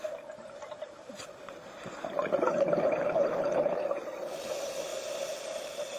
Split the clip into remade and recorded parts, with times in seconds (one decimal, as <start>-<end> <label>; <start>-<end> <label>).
0.0-4.9 remade; 4.9-5.4 recorded; 5.4-6.0 remade